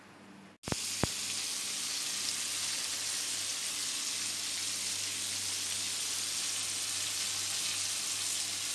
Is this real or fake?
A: real